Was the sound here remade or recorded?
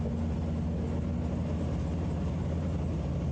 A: recorded